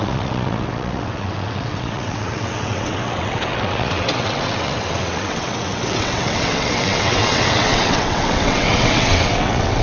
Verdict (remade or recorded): remade